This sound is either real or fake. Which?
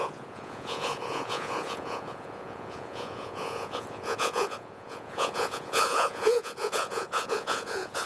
fake